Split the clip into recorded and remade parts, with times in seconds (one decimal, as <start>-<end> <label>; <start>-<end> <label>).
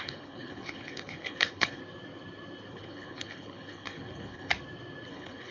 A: 0.0-1.8 remade; 1.8-2.7 recorded; 2.7-4.5 remade; 4.5-5.1 recorded; 5.1-5.5 remade